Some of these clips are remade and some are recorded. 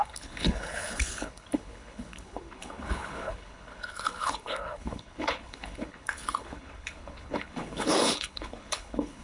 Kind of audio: remade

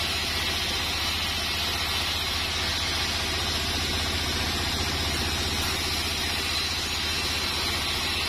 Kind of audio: recorded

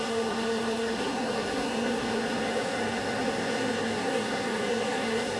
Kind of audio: remade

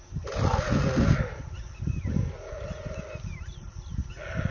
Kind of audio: recorded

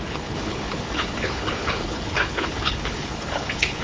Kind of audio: remade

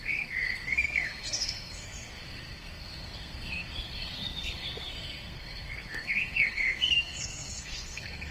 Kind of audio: remade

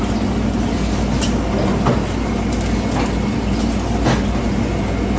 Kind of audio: recorded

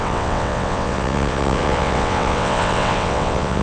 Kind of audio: remade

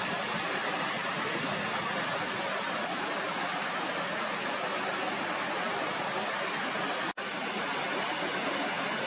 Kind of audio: recorded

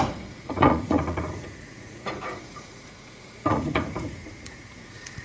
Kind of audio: remade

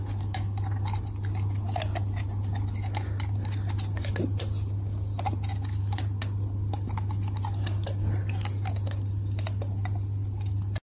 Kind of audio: recorded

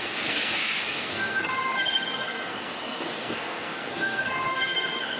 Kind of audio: remade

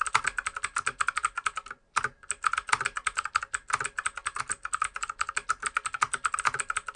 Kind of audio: recorded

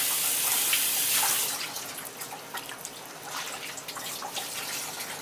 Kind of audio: recorded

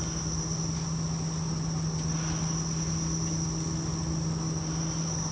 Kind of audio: recorded